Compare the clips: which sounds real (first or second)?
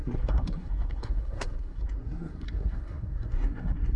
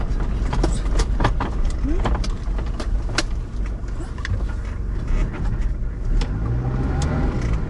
second